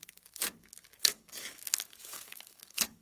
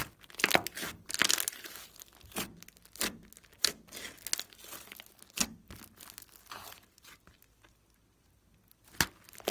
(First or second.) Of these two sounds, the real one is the second